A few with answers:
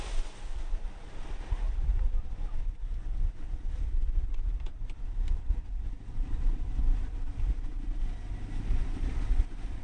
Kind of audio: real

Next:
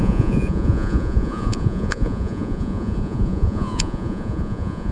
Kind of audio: fake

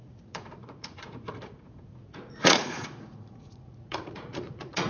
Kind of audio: fake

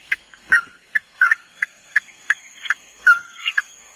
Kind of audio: fake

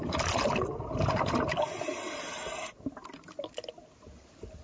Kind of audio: real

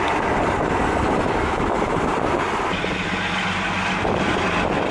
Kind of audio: real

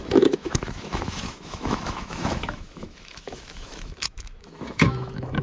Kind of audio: fake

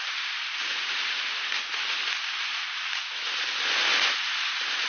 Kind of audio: real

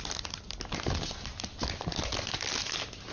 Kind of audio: real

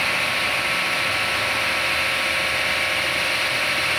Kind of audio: real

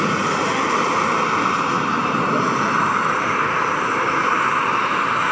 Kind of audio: real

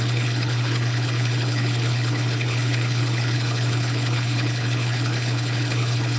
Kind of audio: fake